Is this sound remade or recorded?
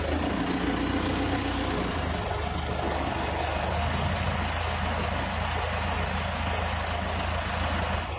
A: recorded